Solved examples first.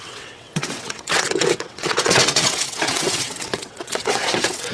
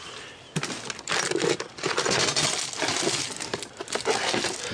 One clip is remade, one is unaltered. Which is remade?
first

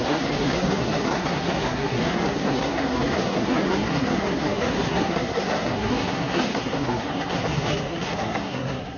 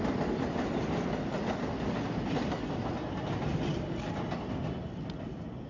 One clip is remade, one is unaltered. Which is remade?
first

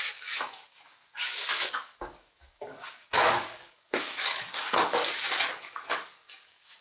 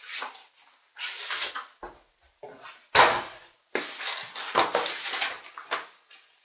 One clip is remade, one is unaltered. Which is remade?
first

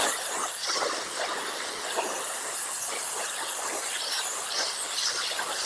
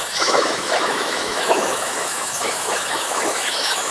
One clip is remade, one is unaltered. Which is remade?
second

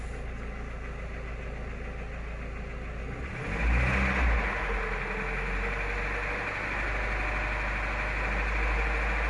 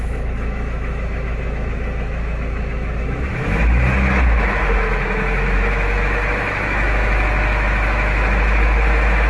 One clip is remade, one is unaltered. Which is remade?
second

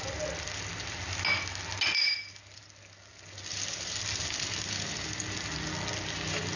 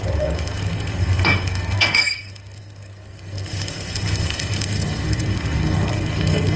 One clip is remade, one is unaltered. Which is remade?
second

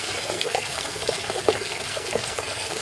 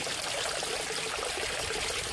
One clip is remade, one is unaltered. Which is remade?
first